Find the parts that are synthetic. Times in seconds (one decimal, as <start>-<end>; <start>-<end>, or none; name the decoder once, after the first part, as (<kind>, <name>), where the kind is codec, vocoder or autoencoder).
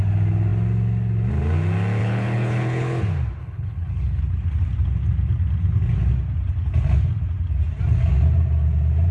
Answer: 2.0-3.0 (codec, HILCodec); 3.4-4.2